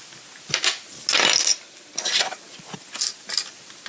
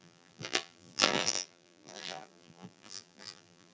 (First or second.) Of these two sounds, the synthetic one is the second